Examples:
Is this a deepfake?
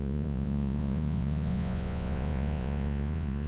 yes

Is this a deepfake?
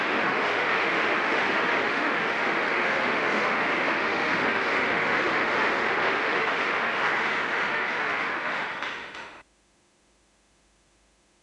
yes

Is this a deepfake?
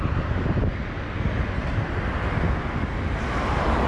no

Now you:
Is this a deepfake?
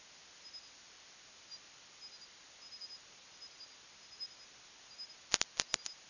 no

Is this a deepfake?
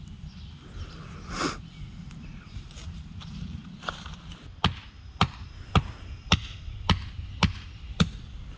yes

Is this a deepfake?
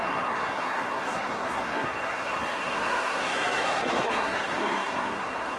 yes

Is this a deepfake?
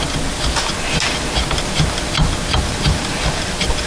no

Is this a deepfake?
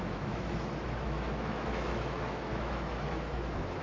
yes